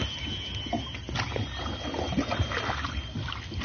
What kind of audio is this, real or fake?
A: real